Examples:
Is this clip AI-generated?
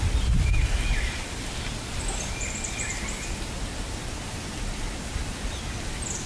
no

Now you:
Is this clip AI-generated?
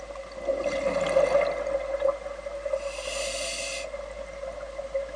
no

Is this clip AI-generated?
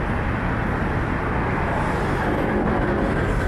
no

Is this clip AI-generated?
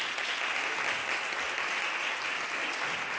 no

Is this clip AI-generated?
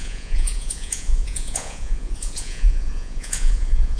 yes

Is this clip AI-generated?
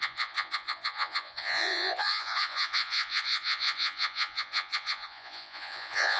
yes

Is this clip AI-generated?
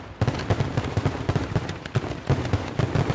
no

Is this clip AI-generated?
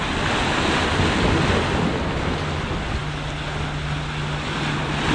no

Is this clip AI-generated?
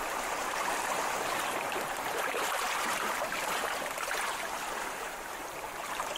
yes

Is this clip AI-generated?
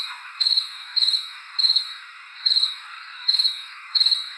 yes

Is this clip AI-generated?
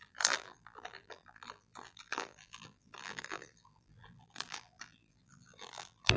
yes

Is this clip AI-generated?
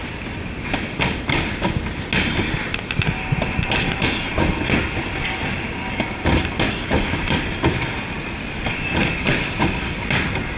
no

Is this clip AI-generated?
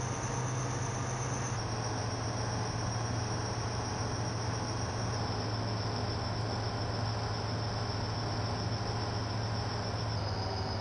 no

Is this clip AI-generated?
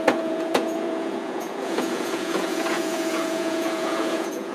yes